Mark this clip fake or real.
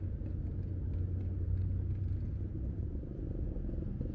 real